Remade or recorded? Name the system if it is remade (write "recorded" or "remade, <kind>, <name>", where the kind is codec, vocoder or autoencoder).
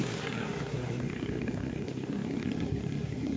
remade, codec, SNAC